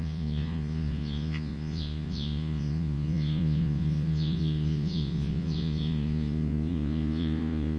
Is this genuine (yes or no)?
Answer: no